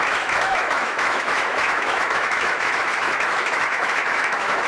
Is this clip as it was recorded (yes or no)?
no